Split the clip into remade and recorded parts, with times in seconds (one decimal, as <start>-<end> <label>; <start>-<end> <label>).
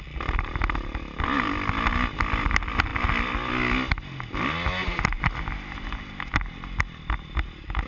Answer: 0.0-7.9 recorded